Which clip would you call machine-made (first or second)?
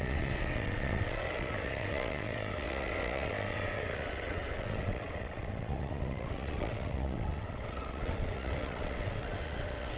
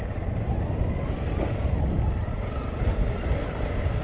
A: first